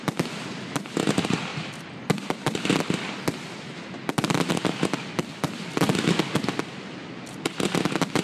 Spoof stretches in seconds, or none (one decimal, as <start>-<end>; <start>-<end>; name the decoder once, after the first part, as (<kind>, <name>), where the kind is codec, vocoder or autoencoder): none